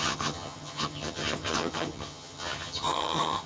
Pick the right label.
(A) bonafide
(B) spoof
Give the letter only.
B